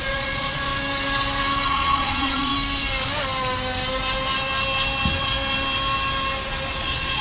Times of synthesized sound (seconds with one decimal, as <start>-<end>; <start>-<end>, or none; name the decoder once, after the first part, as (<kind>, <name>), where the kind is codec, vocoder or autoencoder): 0.0-0.7 (vocoder, Vocos); 1.7-2.5; 6.8-7.2